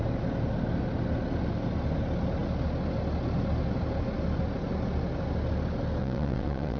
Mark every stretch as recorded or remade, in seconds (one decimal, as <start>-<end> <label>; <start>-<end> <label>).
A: 0.0-6.0 recorded; 6.0-6.8 remade